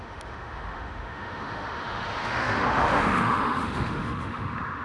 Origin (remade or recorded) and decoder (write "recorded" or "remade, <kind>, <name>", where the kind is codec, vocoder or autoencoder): remade, autoencoder, DAC-VAE